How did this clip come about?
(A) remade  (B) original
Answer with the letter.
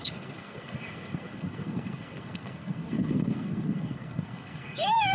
A